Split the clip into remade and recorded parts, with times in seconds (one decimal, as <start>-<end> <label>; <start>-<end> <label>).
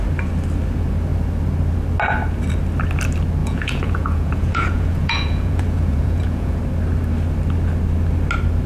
0.0-3.4 recorded; 3.4-6.6 remade; 6.6-8.7 recorded